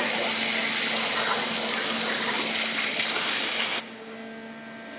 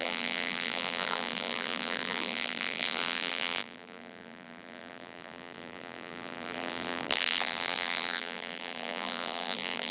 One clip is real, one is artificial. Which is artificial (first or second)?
second